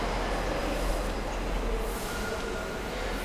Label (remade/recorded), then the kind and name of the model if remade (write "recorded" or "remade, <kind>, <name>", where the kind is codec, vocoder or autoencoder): recorded